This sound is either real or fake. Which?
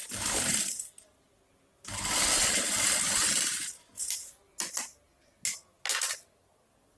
real